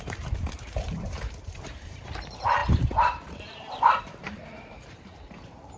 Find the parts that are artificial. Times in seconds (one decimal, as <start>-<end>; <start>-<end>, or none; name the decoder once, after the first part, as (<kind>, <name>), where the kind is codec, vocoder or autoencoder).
0.0-5.8 (vocoder, BigVGAN v2)